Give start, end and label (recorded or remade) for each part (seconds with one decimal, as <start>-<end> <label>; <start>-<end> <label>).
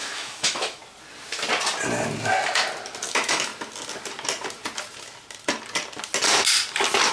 0.0-0.8 remade; 0.8-3.1 recorded; 3.1-3.5 remade; 3.5-7.1 recorded